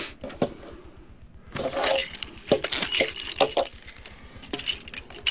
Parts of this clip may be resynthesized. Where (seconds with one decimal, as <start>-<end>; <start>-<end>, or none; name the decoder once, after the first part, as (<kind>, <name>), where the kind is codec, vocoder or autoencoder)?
none